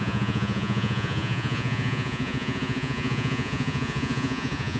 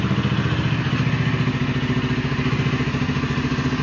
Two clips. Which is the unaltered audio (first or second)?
second